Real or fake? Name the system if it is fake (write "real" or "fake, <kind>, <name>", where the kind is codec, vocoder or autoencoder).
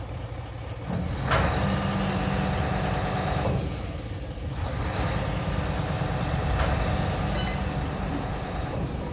real